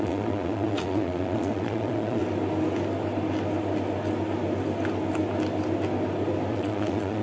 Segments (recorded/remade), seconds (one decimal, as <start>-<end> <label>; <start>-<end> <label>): 0.0-2.2 remade; 2.2-6.5 recorded; 6.5-7.2 remade

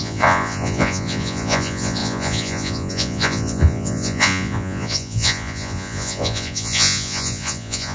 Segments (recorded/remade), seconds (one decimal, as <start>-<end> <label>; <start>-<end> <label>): 0.0-7.9 remade

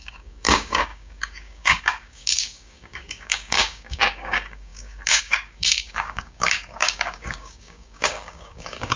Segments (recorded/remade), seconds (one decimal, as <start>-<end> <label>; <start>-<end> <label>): 0.0-9.0 remade